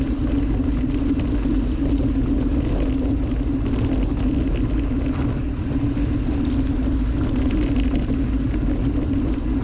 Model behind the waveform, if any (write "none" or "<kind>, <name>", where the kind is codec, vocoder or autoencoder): none